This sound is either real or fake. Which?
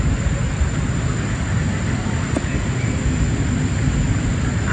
real